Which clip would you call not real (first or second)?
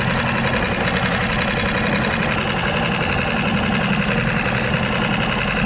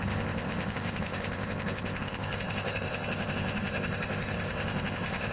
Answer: second